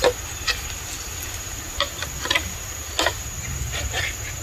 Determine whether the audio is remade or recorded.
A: recorded